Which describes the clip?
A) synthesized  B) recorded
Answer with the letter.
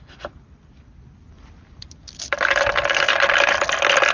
B